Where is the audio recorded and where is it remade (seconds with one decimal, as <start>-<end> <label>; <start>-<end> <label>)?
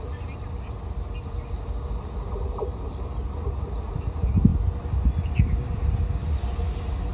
0.0-7.1 recorded